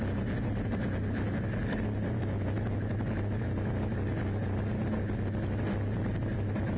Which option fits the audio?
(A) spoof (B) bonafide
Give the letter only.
B